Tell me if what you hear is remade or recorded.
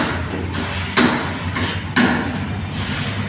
recorded